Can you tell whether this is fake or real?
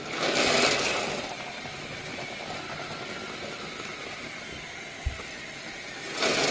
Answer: real